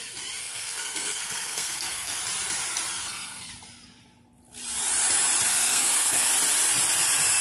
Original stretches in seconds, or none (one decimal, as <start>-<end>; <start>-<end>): 0.0-0.4; 2.2-3.0; 3.5-5.5; 6.3-7.4

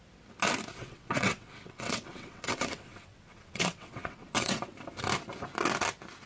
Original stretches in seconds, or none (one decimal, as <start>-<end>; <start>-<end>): 0.0-0.8; 4.6-6.3

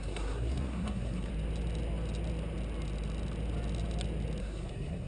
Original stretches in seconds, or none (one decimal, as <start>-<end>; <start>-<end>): 1.3-4.4

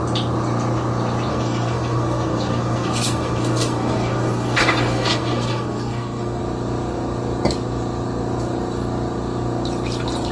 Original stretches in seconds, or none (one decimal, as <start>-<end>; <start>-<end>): 0.0-1.3; 6.4-10.3

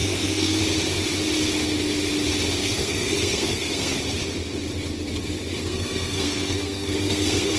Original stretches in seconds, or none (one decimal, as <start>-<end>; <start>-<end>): 0.6-2.6; 4.0-5.6

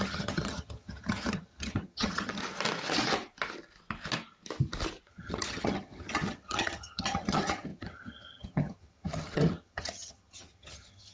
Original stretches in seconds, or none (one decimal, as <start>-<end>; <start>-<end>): 2.4-5.1

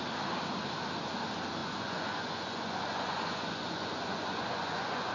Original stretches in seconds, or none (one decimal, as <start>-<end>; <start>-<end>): 0.0-1.6

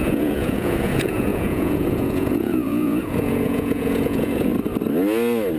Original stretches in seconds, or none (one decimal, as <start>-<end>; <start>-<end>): 4.5-5.6